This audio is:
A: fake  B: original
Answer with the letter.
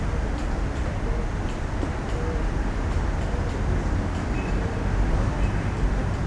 B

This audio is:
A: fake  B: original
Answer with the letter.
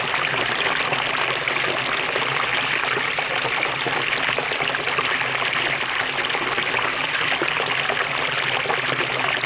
B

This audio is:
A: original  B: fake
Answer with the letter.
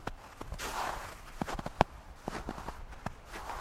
A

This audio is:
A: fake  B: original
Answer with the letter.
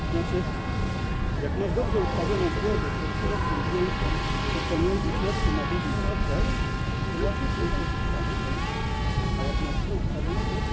B